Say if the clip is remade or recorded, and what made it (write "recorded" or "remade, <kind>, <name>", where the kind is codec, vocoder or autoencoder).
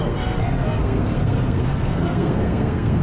remade, codec, SNAC